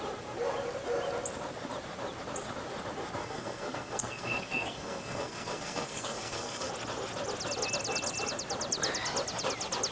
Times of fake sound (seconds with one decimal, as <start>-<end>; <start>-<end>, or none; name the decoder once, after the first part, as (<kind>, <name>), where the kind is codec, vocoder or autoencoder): 3.2-6.7 (codec, SNAC)